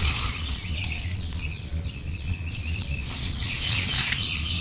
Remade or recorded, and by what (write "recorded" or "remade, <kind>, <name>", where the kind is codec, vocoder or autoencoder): remade, vocoder, Vocos